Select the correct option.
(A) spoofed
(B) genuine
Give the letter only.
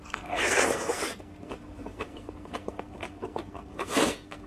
A